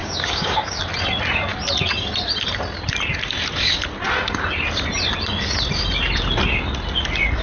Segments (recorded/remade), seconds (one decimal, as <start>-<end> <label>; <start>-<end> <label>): 0.0-0.8 remade; 0.8-7.4 recorded